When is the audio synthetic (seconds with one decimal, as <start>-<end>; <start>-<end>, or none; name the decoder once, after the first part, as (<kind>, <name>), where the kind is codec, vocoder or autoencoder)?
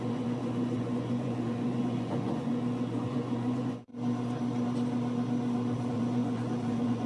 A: 0.0-3.9 (vocoder, Vocos); 5.9-7.1